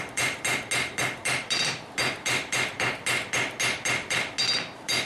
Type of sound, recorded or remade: recorded